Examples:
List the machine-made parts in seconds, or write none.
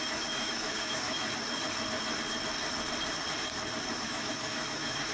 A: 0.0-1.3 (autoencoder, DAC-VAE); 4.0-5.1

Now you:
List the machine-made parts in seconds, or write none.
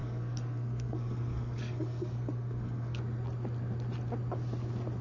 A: 0.0-3.0 (codec, SNAC)